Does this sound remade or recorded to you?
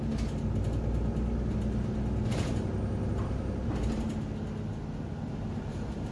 recorded